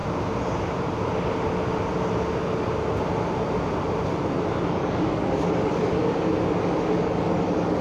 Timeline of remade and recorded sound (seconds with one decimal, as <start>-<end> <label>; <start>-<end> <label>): 0.0-4.7 recorded; 4.7-6.0 remade; 6.0-6.6 recorded; 6.6-7.8 remade